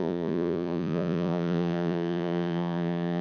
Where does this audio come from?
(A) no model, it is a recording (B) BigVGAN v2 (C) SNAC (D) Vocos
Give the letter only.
D